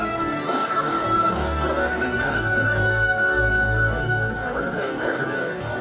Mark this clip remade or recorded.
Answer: remade